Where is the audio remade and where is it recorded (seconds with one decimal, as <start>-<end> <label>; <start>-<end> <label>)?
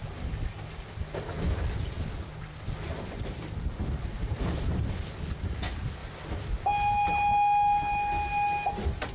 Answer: 0.0-9.1 recorded